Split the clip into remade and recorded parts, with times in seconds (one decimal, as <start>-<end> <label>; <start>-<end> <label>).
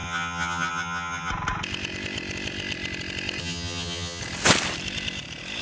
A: 0.0-1.3 remade; 1.3-3.4 recorded; 3.4-4.2 remade; 4.2-5.6 recorded